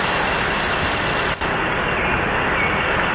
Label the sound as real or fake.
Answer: real